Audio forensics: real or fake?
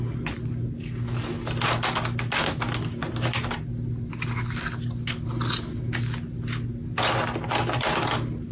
real